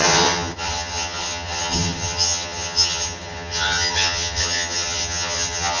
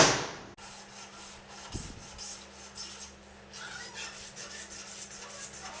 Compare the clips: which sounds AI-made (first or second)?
first